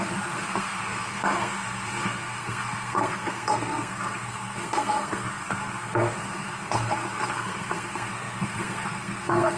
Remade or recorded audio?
remade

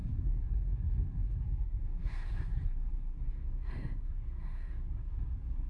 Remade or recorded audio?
remade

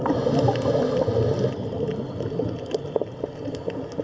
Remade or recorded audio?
recorded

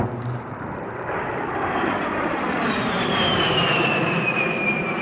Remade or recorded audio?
remade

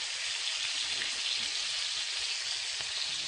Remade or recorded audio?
recorded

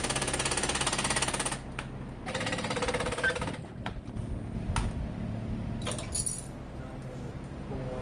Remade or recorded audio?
recorded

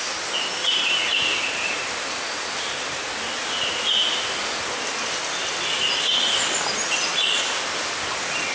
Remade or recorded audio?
recorded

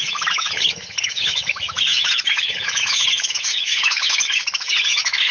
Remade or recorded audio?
remade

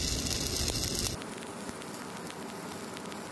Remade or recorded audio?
recorded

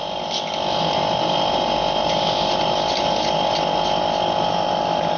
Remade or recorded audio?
recorded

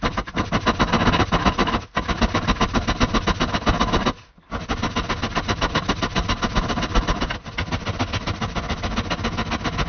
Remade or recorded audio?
recorded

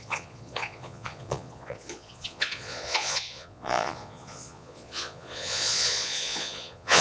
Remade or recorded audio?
remade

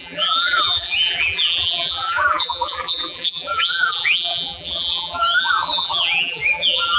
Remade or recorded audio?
remade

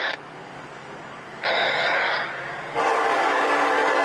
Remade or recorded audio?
remade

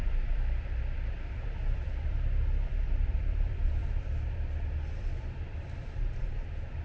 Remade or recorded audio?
remade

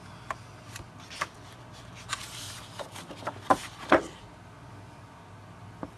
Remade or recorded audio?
recorded